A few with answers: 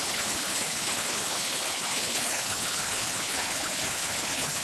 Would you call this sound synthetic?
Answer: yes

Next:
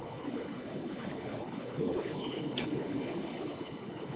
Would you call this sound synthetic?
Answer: yes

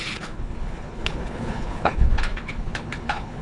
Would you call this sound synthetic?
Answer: yes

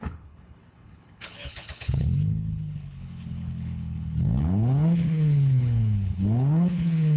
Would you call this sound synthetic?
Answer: yes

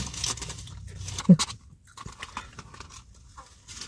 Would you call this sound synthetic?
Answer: no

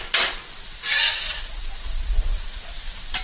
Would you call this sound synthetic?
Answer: no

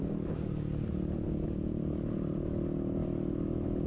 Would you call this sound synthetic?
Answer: no